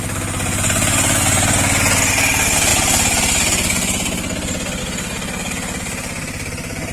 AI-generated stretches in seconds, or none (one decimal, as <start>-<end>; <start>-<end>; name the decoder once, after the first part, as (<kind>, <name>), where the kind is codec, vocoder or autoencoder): none